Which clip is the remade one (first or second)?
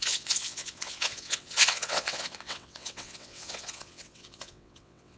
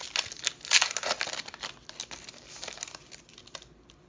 first